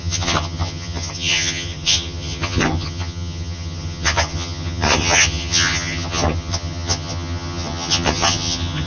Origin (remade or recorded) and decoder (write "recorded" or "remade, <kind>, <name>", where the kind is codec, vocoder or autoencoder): remade, vocoder, HiFi-GAN